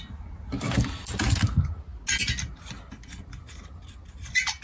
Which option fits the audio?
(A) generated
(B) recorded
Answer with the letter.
B